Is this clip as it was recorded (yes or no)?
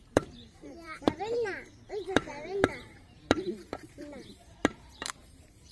no